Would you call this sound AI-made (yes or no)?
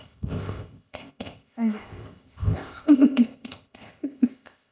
yes